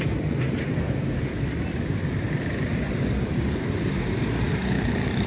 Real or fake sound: fake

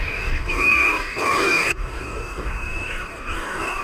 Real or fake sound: fake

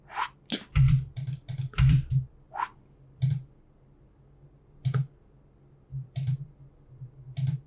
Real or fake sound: real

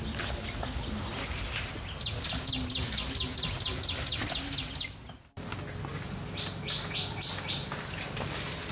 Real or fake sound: real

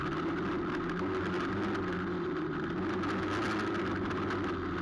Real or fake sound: real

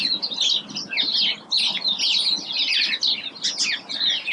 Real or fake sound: real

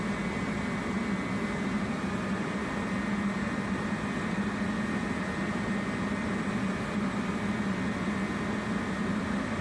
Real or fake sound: real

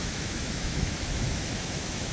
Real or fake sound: fake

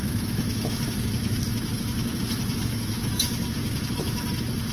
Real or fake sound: fake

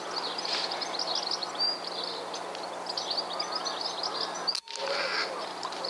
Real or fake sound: real